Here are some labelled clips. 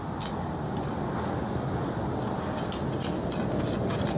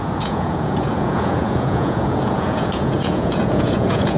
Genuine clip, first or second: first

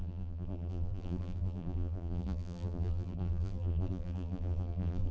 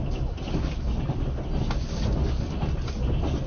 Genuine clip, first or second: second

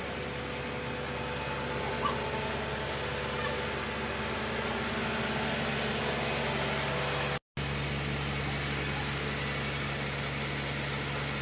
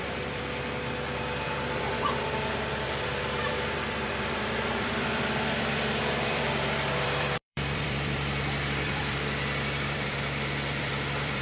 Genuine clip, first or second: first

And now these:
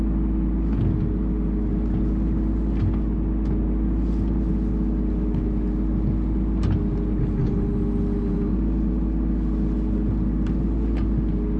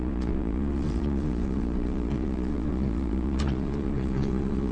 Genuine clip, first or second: first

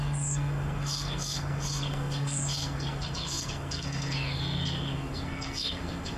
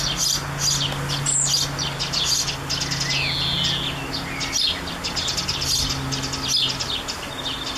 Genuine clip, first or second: second